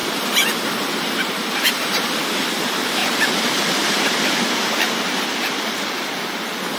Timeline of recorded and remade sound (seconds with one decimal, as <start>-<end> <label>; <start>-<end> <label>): 0.0-6.8 remade

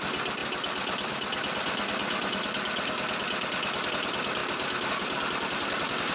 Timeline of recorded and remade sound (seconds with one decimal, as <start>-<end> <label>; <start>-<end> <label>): 0.0-6.1 recorded

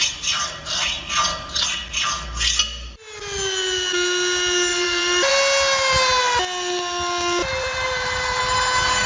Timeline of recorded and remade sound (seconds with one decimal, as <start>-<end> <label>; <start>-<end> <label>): 0.0-4.7 recorded; 4.7-5.3 remade; 5.3-7.4 recorded; 7.4-8.4 remade; 8.4-9.1 recorded

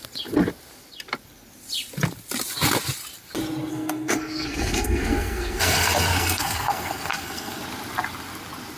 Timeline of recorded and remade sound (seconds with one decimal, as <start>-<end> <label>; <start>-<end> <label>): 0.0-3.7 recorded; 3.7-7.6 remade; 7.6-8.8 recorded

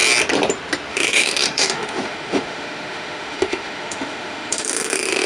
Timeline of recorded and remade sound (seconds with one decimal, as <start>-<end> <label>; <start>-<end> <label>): 0.0-0.9 recorded; 0.9-5.3 remade